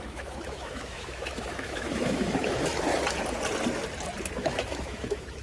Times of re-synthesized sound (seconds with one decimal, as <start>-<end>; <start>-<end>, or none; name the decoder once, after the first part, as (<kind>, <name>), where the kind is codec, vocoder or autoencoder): 0.0-2.7 (autoencoder, DAC-VAE); 4.2-5.4